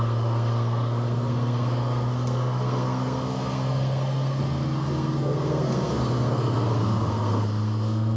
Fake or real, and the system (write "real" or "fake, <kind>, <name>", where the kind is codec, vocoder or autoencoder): fake, codec, SNAC